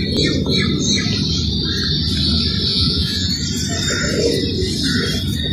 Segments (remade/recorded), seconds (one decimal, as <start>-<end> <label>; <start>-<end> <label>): 0.0-2.7 recorded; 2.7-3.3 remade; 3.3-5.5 recorded